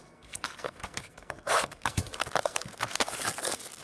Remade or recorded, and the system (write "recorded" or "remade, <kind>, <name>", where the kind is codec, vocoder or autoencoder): remade, codec, SNAC